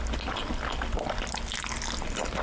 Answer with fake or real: real